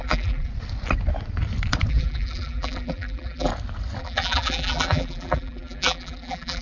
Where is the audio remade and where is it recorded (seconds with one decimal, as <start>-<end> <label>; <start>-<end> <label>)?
0.0-0.5 remade; 0.5-1.9 recorded; 1.9-3.5 remade; 3.5-4.0 recorded; 4.0-6.6 remade